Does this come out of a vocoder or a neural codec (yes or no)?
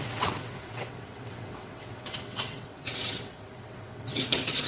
yes